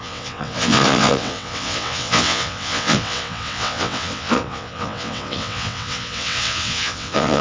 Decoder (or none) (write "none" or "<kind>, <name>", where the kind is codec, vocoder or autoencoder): vocoder, WaveNeXt